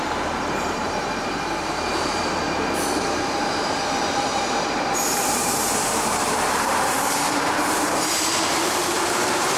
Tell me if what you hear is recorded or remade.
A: remade